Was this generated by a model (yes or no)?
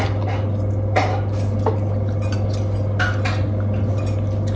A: no